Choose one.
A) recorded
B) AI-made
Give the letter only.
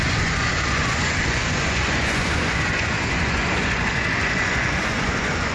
B